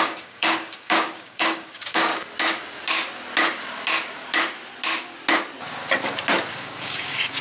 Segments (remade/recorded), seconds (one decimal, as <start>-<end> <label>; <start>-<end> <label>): 0.0-2.1 remade; 2.1-6.5 recorded; 6.5-7.4 remade